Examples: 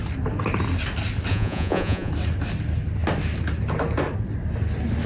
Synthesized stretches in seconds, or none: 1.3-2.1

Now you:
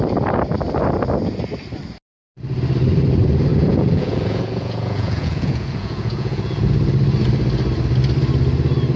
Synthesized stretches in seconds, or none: 3.5-6.7

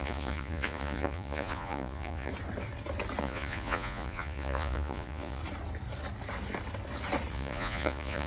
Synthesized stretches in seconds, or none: 0.0-2.3; 3.2-5.4; 7.3-8.3

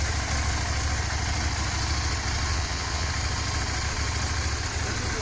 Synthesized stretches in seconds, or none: 2.5-3.1